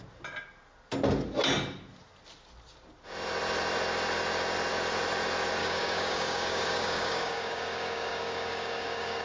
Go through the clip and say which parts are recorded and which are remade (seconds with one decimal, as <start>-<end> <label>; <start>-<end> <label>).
0.0-5.6 recorded; 5.6-9.2 remade

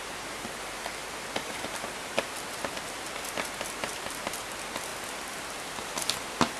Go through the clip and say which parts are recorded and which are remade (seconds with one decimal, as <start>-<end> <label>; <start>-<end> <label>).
0.0-6.6 recorded

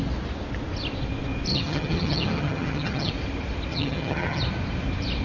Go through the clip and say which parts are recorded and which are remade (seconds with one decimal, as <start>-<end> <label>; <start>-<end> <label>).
0.0-1.5 recorded; 1.5-3.1 remade; 3.1-3.7 recorded; 3.7-4.4 remade; 4.4-5.2 recorded

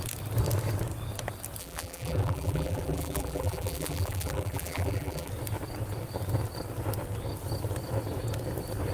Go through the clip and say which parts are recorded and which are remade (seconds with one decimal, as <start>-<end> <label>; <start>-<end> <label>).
0.0-1.6 recorded; 1.6-5.3 remade; 5.3-8.9 recorded

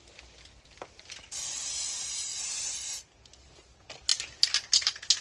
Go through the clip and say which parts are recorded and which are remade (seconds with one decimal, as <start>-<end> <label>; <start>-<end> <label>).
0.0-5.2 recorded

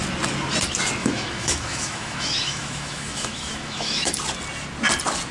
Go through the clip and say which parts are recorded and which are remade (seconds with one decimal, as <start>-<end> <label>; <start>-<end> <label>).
0.0-1.0 recorded; 1.0-4.2 remade; 4.2-5.3 recorded